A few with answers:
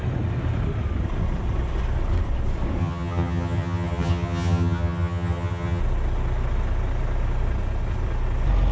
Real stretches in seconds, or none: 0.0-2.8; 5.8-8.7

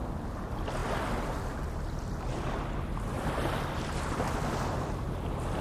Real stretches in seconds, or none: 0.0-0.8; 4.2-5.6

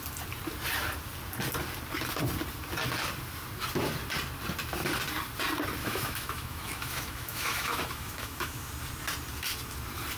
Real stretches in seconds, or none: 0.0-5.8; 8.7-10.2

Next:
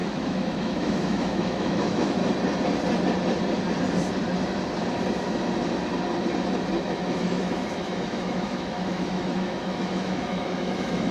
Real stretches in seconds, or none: 2.2-6.8

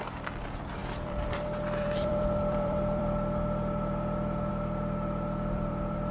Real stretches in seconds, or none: none